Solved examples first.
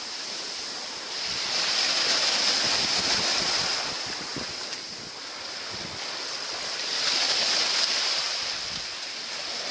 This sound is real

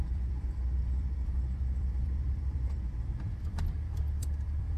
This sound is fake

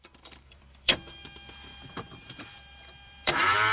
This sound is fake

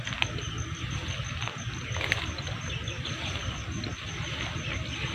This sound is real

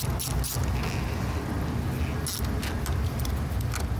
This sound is real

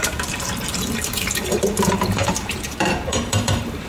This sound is fake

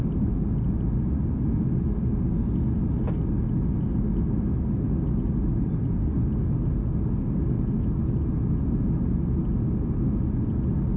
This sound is real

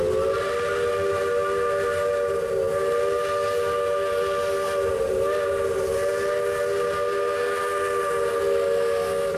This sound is real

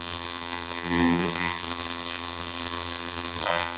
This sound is fake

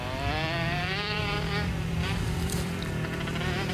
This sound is fake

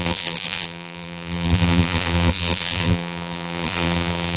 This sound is fake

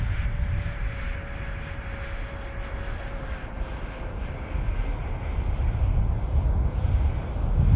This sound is real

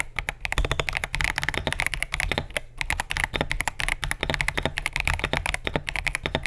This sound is real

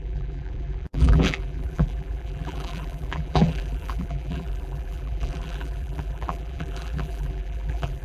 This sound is fake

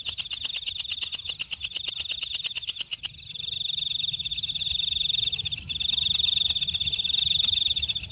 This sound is real